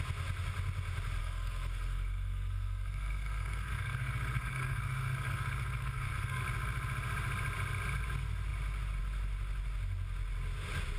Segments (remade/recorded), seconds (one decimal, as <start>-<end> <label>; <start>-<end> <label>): 0.0-1.2 recorded; 1.2-6.4 remade; 6.4-11.0 recorded